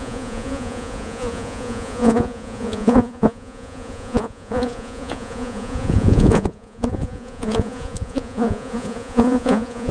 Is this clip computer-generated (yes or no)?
yes